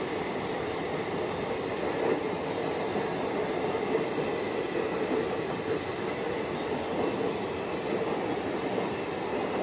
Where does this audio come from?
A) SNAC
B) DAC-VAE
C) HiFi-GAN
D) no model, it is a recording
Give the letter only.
D